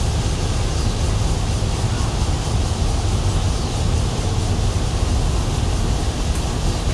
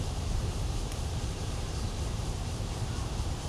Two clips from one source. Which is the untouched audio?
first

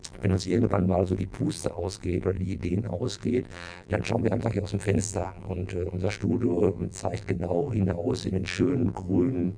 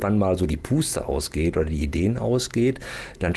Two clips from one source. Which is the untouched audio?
second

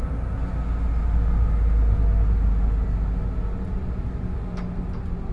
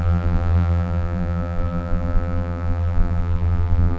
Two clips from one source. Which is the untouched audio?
first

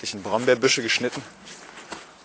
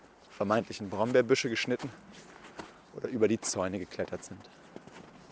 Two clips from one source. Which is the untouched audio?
second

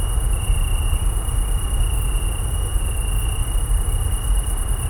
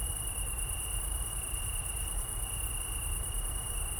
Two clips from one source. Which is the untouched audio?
first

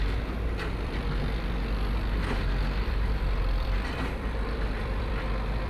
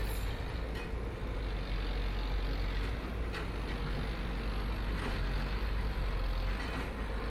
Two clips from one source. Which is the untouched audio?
second